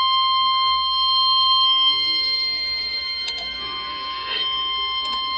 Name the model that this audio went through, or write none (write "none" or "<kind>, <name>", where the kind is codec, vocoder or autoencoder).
codec, SNAC